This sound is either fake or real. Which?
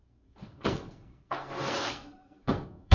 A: fake